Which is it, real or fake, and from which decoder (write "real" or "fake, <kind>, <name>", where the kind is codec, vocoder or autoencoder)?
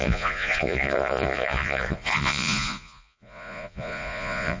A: fake, vocoder, Vocos